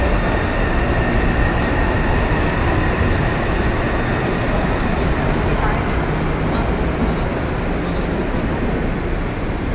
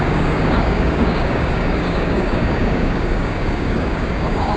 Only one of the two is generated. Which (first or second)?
second